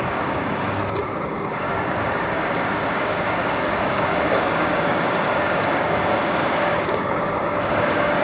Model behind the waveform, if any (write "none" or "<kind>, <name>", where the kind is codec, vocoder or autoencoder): codec, DAC